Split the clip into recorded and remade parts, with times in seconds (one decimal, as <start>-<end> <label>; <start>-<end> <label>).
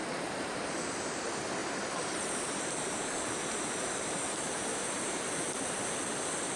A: 0.0-1.6 recorded; 1.6-5.4 remade; 5.4-6.6 recorded